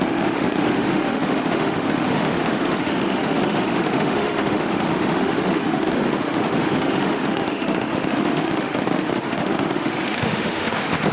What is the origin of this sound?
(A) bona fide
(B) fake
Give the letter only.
B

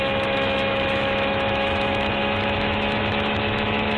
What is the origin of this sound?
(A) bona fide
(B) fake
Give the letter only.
B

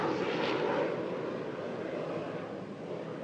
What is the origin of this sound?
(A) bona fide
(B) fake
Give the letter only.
A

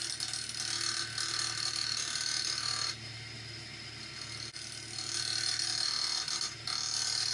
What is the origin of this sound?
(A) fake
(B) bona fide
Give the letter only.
B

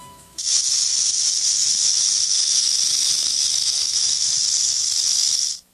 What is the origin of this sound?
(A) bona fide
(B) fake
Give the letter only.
B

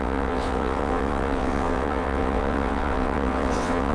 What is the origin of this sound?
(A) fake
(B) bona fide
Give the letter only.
A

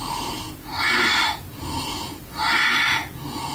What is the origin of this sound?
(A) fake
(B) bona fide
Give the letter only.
B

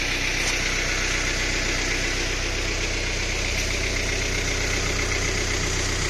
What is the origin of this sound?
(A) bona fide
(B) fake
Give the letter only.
A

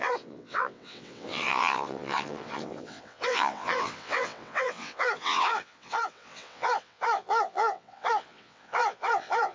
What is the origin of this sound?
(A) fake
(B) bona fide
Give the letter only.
A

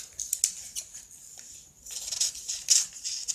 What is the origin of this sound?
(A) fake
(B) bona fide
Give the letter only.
B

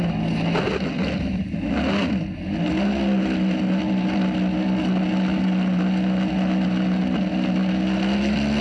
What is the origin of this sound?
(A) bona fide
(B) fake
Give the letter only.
A